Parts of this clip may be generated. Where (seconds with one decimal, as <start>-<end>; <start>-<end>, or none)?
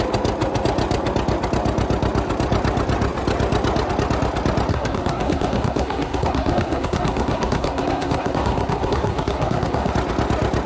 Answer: 4.7-9.9